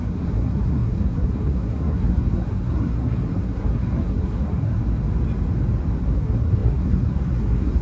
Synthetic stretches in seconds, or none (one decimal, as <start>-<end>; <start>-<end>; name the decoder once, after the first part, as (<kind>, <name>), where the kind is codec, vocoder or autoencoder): 0.0-4.8 (codec, SNAC); 6.0-7.8

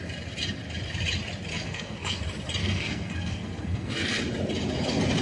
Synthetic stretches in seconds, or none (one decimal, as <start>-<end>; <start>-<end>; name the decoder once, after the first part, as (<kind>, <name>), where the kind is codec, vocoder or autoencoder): 1.5-2.2 (codec, SNAC); 2.6-4.2

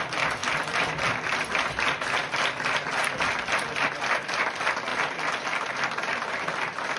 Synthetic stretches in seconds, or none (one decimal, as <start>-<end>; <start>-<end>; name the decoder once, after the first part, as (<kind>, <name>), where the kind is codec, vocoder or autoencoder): none

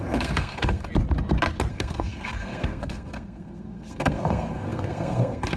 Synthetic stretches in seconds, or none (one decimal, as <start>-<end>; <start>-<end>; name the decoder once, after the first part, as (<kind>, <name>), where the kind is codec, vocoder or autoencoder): 0.0-0.9 (codec, SNAC); 1.7-5.6